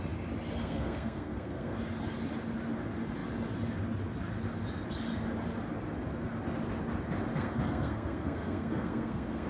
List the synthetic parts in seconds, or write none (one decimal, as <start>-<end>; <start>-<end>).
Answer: 0.6-1.8; 7.3-9.5